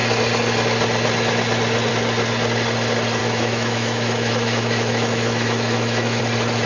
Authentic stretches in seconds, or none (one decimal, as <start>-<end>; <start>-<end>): 0.0-3.2; 6.2-6.7